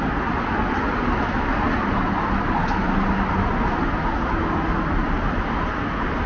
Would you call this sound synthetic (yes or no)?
no